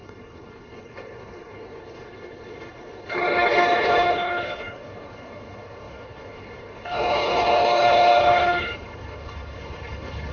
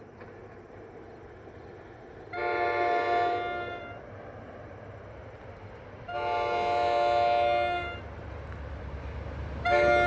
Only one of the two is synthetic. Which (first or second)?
first